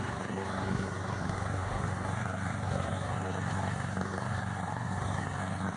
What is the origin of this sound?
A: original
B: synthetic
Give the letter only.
B